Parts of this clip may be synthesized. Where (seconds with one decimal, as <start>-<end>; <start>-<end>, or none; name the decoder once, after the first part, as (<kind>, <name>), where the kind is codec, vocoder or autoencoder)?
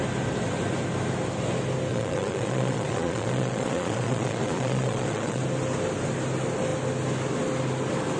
1.9-5.4 (vocoder, Vocos)